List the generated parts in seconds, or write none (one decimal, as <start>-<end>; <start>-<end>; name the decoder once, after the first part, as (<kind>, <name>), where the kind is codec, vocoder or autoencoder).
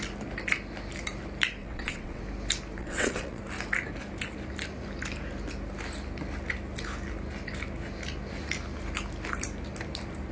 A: 1.6-2.2 (vocoder, WaveNeXt); 2.8-3.4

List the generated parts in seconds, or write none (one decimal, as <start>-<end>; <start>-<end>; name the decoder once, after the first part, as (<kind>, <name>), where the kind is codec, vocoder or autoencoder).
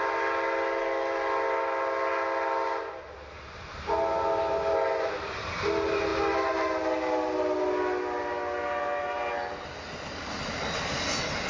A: none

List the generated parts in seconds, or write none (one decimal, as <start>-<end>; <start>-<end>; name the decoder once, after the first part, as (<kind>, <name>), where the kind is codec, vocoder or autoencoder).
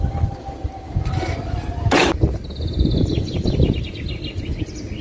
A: none